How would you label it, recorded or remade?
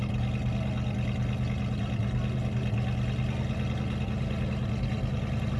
recorded